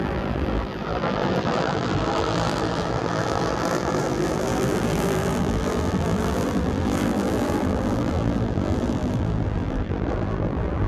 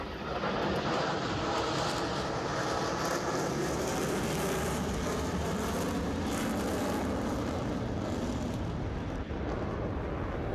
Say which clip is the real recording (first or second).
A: second